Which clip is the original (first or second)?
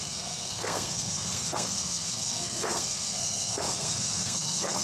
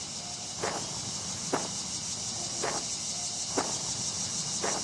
second